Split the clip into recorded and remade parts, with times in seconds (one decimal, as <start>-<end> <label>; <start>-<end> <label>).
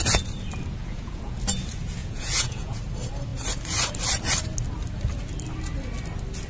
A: 0.0-0.8 recorded; 0.8-1.4 remade; 1.4-2.0 recorded; 2.0-2.8 remade; 2.8-6.5 recorded